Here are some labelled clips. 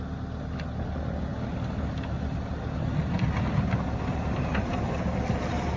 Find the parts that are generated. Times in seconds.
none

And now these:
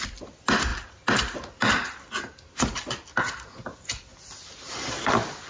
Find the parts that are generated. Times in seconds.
none

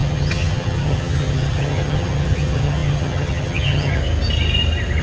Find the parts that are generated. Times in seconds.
0.0-4.0

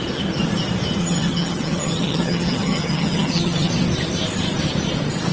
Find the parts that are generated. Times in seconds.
1.0-3.7

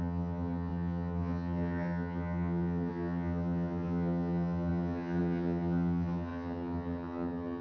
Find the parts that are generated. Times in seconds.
0.0-7.6

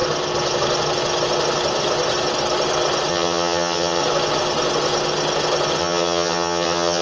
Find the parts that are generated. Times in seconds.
3.1-4.0; 5.8-7.0